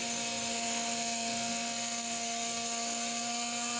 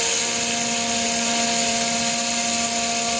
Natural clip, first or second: second